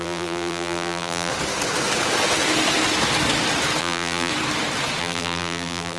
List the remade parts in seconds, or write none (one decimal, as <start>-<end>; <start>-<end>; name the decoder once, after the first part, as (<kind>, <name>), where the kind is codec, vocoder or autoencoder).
0.0-1.3 (vocoder, BigVGAN v2); 3.8-4.3; 5.0-6.0